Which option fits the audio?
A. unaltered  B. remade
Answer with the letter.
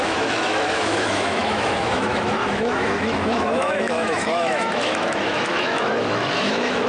B